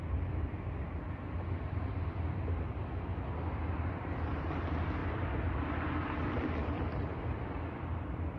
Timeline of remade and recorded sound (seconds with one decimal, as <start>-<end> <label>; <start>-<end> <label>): 0.0-3.1 remade; 3.1-3.9 recorded; 3.9-5.0 remade; 5.0-5.5 recorded; 5.5-8.4 remade